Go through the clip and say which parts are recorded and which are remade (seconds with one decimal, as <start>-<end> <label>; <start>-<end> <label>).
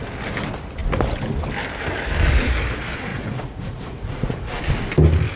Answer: 0.0-3.1 recorded; 3.1-4.6 remade; 4.6-5.4 recorded